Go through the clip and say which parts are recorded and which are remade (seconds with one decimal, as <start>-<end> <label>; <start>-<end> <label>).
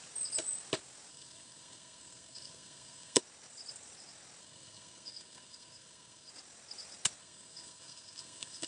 0.0-1.1 recorded; 1.1-3.2 remade; 3.2-4.4 recorded; 4.4-6.3 remade; 6.3-7.2 recorded; 7.2-8.7 remade